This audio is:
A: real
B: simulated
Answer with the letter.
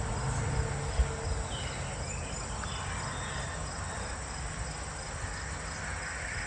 A